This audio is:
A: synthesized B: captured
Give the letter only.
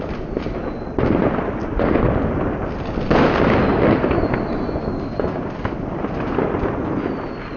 B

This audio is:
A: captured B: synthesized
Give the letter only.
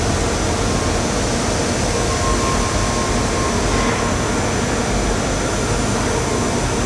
A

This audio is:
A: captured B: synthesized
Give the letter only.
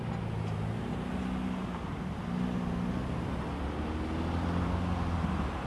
A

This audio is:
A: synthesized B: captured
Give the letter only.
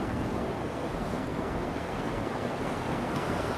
A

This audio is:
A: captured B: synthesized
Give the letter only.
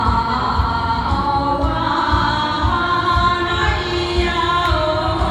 A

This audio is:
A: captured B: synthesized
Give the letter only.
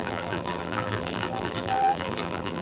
B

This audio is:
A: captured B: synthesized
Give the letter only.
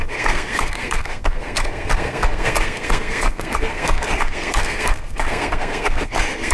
B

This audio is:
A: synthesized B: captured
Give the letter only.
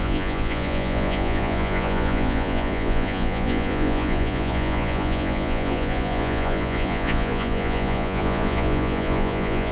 A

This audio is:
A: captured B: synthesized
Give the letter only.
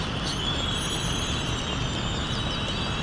A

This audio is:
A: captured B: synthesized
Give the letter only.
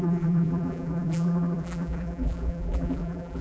B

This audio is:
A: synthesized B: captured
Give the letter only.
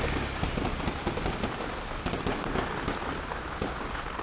B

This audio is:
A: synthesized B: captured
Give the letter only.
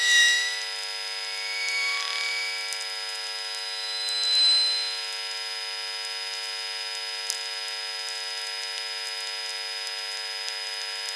B